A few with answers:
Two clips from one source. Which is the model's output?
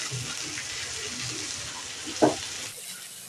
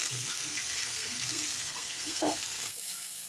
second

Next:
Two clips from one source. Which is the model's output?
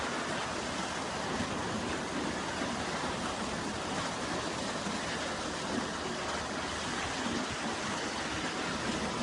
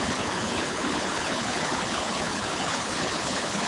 second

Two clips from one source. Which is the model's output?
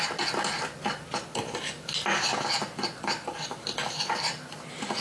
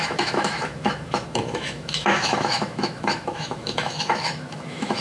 second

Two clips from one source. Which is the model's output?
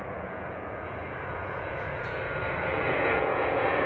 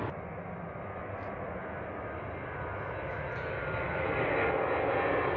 first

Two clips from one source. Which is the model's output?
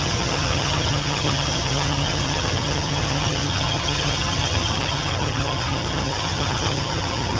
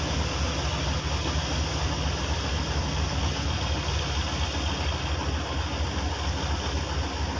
first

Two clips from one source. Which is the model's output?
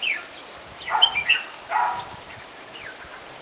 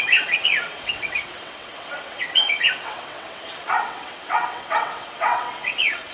second